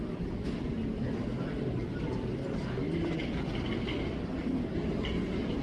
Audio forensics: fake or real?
real